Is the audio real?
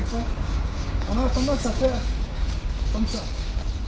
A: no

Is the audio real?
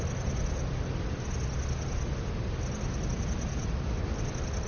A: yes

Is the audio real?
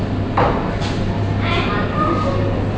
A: yes